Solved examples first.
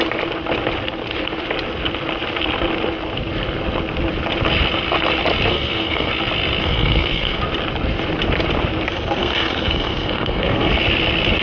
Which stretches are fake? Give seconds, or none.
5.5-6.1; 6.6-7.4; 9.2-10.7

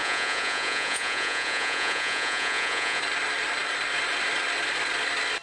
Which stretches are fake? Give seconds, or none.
0.0-3.0

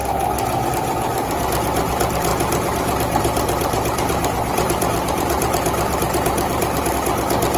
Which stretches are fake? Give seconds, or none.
0.0-0.7; 2.3-6.9

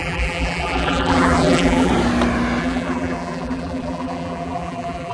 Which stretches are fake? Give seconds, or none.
0.0-1.9; 2.6-5.1

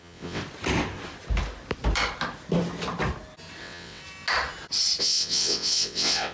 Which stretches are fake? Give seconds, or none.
0.0-0.4; 3.6-4.0; 5.0-6.3